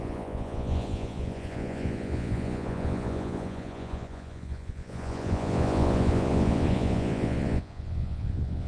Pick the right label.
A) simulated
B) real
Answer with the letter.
A